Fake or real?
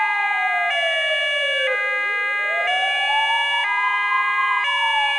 real